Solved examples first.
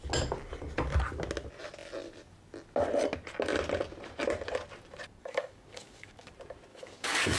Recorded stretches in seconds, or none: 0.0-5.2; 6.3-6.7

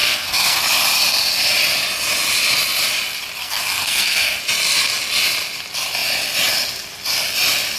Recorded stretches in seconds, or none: 0.6-3.4; 4.4-7.8

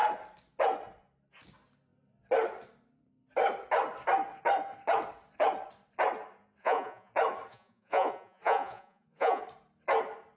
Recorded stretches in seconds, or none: 0.0-6.6; 7.1-7.5; 9.4-10.4

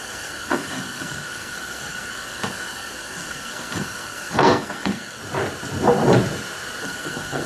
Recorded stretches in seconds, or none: 5.2-6.8